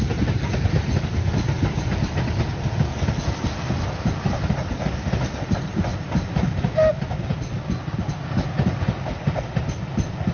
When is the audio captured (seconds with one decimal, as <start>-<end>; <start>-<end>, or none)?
0.0-10.3